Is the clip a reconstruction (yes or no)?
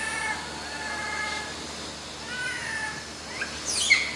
no